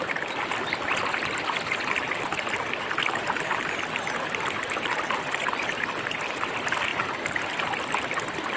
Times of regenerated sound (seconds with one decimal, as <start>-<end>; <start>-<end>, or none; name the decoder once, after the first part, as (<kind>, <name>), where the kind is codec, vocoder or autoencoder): 0.0-6.9 (vocoder, BigVGAN v2)